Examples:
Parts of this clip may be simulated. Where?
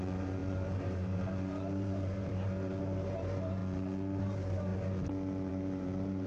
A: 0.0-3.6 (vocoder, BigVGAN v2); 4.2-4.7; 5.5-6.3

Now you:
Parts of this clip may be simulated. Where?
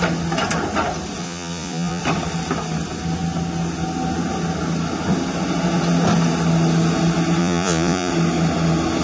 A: 1.2-2.0 (vocoder, Vocos); 7.4-8.1